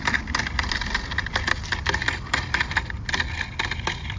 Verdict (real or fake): real